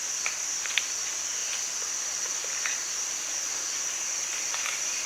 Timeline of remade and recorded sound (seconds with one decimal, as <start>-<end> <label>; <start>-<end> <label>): 0.0-5.1 recorded